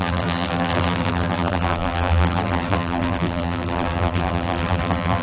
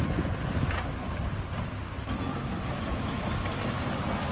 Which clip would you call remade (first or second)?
first